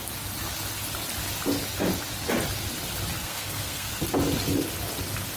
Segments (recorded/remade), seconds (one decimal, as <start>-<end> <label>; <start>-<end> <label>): 0.0-3.2 recorded; 3.2-4.0 remade; 4.0-5.4 recorded